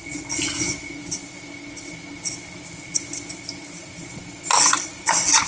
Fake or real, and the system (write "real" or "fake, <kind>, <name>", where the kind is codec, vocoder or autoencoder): real